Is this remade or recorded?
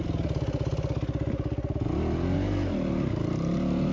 recorded